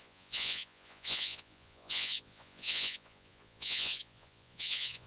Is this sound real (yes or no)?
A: no